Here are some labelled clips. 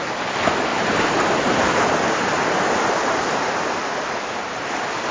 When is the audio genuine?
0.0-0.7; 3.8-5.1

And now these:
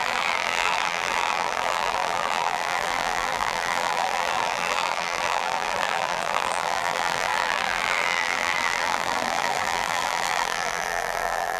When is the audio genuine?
none

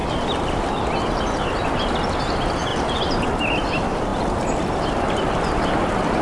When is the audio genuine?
0.6-2.7; 3.3-6.2

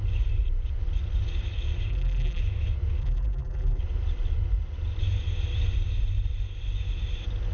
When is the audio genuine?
0.0-1.9; 2.4-3.0; 3.8-7.5

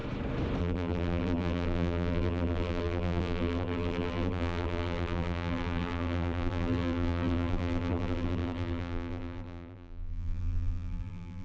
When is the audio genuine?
0.0-0.6

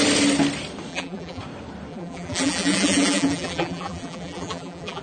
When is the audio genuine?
0.0-0.9; 1.4-1.9